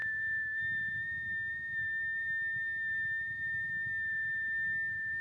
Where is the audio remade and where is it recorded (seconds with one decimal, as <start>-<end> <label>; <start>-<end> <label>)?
0.0-5.2 recorded